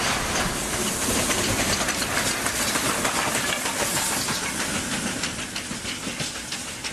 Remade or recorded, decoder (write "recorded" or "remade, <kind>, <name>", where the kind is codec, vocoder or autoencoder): recorded